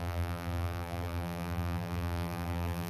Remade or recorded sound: remade